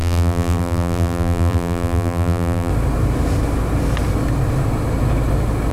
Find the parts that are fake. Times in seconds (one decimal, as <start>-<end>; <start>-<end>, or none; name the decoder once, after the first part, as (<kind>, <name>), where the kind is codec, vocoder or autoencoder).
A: 0.0-2.7 (vocoder, BigVGAN v2)